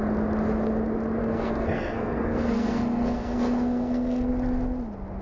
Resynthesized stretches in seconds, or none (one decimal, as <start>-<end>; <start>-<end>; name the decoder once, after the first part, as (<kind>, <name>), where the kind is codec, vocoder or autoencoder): 1.2-4.3 (codec, SNAC)